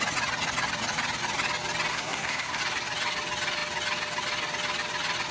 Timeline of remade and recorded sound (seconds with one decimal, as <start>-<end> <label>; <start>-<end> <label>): 0.0-1.9 recorded; 1.9-2.6 remade; 2.6-5.3 recorded